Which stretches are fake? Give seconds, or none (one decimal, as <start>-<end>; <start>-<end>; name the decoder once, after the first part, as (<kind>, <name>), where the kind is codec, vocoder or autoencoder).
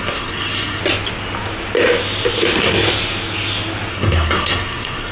0.0-0.8 (codec, SNAC); 3.9-5.1